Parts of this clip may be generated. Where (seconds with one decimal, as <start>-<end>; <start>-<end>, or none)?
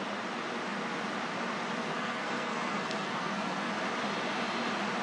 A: 1.9-3.7